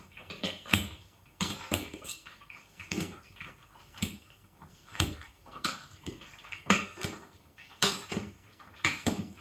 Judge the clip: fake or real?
fake